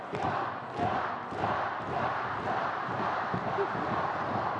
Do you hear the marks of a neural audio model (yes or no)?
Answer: no